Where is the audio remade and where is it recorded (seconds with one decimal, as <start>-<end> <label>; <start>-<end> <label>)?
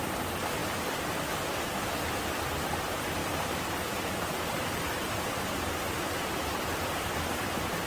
0.0-3.2 recorded; 3.2-7.0 remade; 7.0-7.9 recorded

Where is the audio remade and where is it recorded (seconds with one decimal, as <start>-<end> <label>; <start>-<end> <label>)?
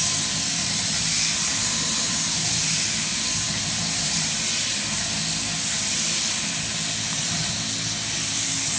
0.0-0.9 remade; 0.9-1.5 recorded; 1.5-4.9 remade; 4.9-8.8 recorded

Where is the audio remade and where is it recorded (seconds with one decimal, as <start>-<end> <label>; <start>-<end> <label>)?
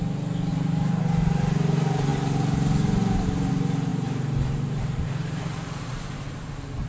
0.0-0.5 recorded; 0.5-1.0 remade; 1.0-3.9 recorded; 3.9-6.5 remade; 6.5-6.9 recorded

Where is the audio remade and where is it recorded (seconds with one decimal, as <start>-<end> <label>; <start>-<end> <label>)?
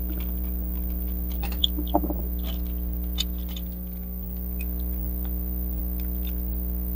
0.0-7.0 recorded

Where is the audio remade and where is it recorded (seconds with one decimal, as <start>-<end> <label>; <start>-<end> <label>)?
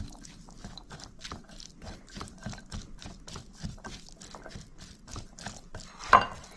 0.0-5.1 recorded; 5.1-5.8 remade; 5.8-6.6 recorded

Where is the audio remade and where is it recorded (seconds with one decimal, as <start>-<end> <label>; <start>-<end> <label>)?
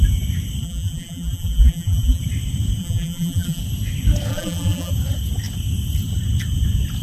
0.0-0.6 recorded; 0.6-2.2 remade; 2.2-2.8 recorded; 2.8-3.6 remade; 3.6-4.3 recorded; 4.3-4.9 remade; 4.9-7.0 recorded